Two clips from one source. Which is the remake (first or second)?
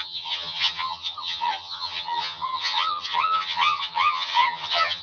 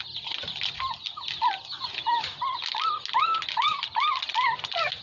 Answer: first